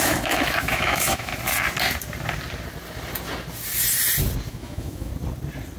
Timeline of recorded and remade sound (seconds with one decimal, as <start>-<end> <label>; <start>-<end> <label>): 0.0-1.3 remade; 1.3-4.5 recorded; 4.5-5.1 remade; 5.1-5.8 recorded